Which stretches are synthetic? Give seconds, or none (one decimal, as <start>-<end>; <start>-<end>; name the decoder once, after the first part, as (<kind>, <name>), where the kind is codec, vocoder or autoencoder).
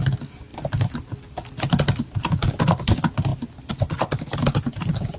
none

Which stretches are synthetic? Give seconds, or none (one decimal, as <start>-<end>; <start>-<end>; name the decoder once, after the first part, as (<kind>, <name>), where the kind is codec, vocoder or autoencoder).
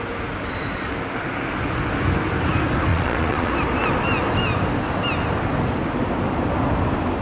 2.9-3.5 (vocoder, Vocos)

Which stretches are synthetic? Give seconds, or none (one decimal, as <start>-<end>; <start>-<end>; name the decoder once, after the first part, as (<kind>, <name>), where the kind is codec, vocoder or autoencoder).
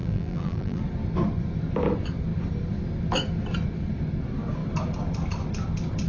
0.0-0.8 (vocoder, BigVGAN v2)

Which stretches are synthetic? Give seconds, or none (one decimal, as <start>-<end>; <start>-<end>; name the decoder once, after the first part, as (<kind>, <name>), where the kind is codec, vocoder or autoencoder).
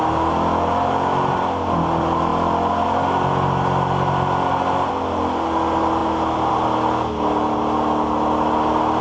none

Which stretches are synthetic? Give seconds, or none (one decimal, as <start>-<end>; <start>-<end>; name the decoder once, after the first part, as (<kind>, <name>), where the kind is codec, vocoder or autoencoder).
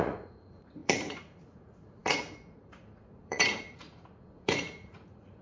0.0-5.4 (vocoder, Vocos)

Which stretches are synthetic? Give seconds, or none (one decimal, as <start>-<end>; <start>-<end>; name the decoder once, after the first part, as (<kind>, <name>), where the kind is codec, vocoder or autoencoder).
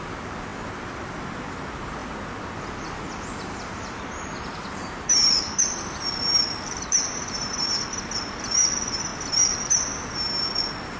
0.0-9.1 (vocoder, BigVGAN v2); 9.7-11.0